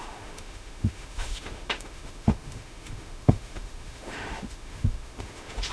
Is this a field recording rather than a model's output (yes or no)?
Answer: no